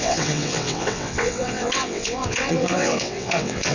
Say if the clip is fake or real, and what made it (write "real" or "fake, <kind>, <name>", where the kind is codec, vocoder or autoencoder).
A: fake, vocoder, WaveNeXt